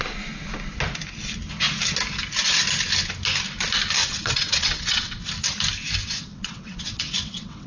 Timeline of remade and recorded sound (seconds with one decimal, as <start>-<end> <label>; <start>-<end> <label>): 0.0-4.0 recorded; 4.0-5.2 remade; 5.2-6.0 recorded; 6.0-7.7 remade